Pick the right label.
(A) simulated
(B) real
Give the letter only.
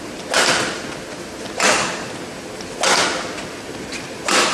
B